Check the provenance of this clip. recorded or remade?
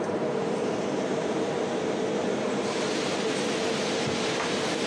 remade